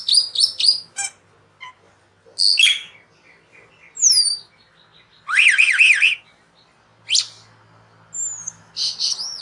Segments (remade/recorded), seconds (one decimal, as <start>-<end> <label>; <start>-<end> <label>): 0.0-9.4 recorded